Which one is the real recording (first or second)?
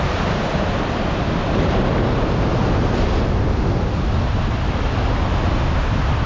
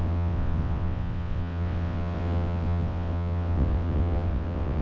first